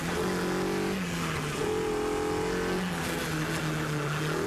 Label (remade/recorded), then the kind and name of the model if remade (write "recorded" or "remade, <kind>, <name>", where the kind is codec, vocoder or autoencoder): recorded